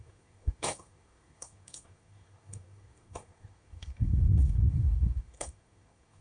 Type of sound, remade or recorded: remade